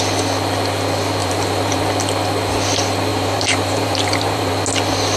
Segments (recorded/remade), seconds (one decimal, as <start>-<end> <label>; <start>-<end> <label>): 0.0-1.2 recorded; 1.2-1.8 remade; 1.8-3.1 recorded; 3.1-4.5 remade; 4.5-5.2 recorded